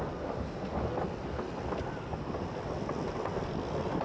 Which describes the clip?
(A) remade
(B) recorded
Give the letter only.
B